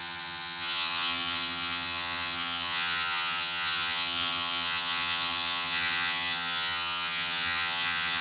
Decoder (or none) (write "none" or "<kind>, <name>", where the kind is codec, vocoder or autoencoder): vocoder, HiFi-GAN